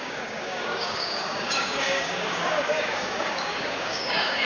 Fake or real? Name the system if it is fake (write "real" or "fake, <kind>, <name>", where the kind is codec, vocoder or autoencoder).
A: fake, codec, DAC